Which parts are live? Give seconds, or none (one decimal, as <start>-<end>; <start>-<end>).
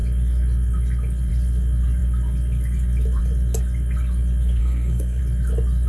0.0-4.6; 5.2-5.9